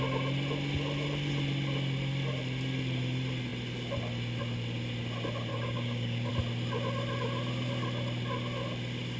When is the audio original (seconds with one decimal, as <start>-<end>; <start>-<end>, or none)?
0.0-5.5; 6.3-9.2